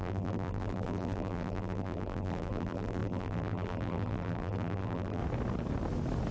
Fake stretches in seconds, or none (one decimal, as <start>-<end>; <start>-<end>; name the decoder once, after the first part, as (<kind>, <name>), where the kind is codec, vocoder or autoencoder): 0.0-5.2 (vocoder, BigVGAN v2)